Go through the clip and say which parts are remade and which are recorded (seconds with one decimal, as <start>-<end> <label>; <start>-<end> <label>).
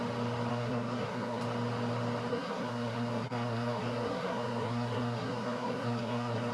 0.0-0.5 recorded; 0.5-1.4 remade; 1.4-2.3 recorded; 2.3-6.5 remade